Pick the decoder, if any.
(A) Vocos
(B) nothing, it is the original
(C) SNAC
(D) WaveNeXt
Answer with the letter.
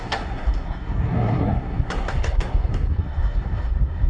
C